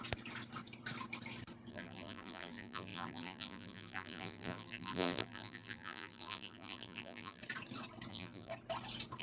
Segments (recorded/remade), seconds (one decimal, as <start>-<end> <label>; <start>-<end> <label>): 0.0-1.7 recorded; 1.7-7.4 remade; 7.4-8.1 recorded; 8.1-8.5 remade; 8.5-9.2 recorded